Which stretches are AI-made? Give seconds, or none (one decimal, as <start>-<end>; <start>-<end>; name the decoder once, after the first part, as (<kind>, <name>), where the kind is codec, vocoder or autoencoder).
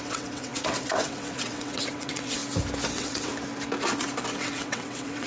0.0-2.4 (vocoder, WaveNeXt); 2.9-3.3; 4.3-5.3